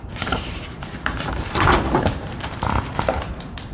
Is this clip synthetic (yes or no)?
yes